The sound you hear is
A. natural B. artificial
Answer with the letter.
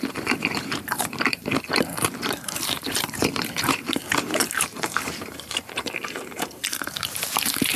B